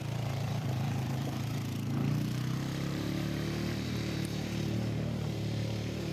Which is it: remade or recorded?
remade